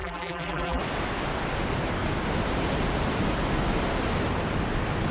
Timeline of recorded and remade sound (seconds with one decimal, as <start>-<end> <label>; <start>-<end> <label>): 0.0-0.8 remade; 0.8-5.1 recorded

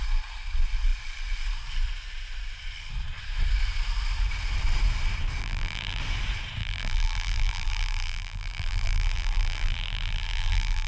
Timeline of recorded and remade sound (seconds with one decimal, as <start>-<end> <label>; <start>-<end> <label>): 0.0-5.4 recorded; 5.4-6.0 remade; 6.0-6.6 recorded; 6.6-10.9 remade

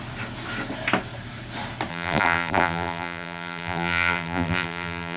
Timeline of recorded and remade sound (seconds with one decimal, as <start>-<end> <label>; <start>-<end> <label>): 0.0-1.9 recorded; 1.9-5.2 remade

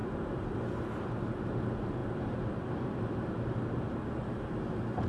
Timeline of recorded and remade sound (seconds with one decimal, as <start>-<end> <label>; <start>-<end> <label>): 0.0-2.0 recorded; 2.0-3.0 remade; 3.0-5.1 recorded